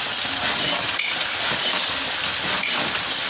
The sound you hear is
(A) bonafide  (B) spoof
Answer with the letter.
A